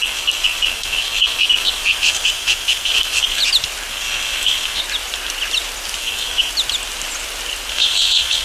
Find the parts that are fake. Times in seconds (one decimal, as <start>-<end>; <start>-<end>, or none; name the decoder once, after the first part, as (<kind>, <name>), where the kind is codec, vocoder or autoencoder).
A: 0.0-3.4 (codec, SNAC); 3.9-4.8; 6.0-6.5; 7.7-8.4